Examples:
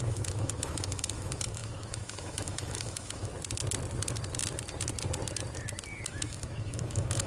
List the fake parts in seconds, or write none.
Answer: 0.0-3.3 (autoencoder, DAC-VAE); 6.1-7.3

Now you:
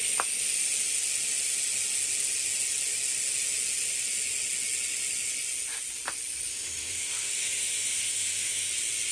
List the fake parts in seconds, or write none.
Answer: 6.5-8.7 (autoencoder, DAC-VAE)